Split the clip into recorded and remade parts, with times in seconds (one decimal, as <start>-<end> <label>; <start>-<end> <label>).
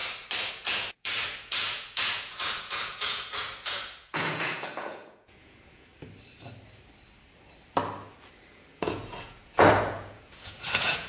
0.0-0.5 recorded; 0.5-5.9 remade; 5.9-8.5 recorded; 8.5-11.1 remade